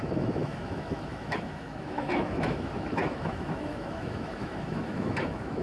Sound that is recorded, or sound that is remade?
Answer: remade